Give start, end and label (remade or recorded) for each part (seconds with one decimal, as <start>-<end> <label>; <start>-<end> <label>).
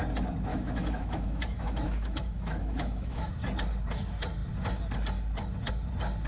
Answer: 0.0-0.5 recorded; 0.5-3.3 remade; 3.3-6.3 recorded